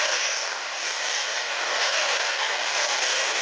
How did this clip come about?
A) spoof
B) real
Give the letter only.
A